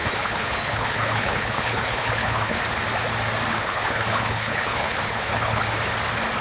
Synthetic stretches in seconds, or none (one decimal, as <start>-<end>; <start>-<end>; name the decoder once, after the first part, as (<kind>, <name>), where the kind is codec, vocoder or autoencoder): 0.0-2.6 (codec, HILCodec); 3.5-5.6